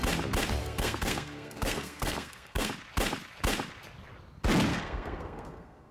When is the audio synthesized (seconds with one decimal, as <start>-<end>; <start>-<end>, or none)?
0.6-2.7; 4.7-5.9